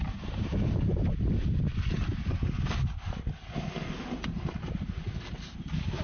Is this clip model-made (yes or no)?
no